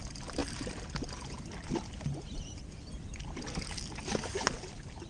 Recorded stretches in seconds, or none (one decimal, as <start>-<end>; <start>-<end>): 0.4-1.3